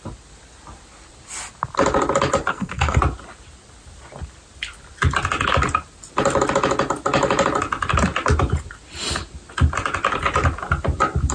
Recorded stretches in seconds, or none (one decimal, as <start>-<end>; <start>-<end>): 0.0-2.5; 3.0-11.3